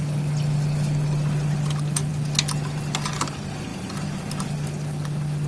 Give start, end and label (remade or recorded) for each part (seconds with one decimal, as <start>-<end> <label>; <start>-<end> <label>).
0.0-5.5 recorded